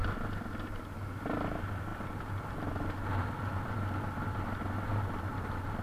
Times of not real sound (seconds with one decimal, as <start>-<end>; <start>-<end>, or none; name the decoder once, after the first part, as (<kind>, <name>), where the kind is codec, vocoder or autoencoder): none